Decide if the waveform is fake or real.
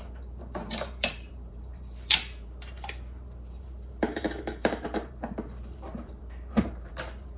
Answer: fake